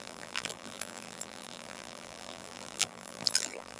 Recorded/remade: remade